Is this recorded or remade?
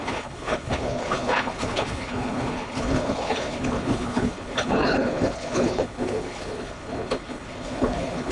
remade